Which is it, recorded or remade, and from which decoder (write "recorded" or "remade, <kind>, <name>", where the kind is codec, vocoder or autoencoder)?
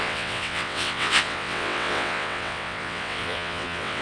remade, vocoder, WaveNeXt